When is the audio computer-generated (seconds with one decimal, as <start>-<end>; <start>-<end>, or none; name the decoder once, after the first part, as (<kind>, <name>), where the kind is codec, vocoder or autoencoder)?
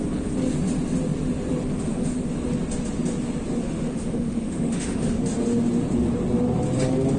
3.6-5.2 (autoencoder, DAC-VAE)